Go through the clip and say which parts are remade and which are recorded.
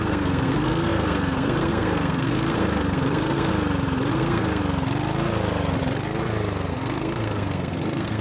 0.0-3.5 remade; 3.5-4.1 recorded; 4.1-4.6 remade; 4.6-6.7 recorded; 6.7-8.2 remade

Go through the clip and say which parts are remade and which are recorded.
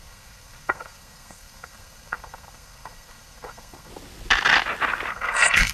0.0-3.9 remade; 3.9-5.1 recorded; 5.1-5.7 remade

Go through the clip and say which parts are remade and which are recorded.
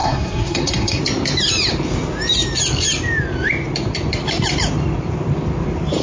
0.0-1.0 remade; 1.0-6.0 recorded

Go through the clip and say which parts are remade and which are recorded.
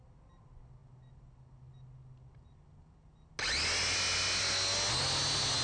0.0-5.6 recorded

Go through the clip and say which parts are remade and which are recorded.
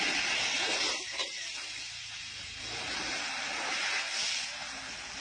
0.0-5.2 recorded